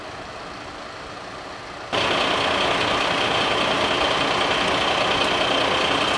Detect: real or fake real